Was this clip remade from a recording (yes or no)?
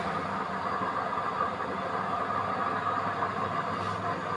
no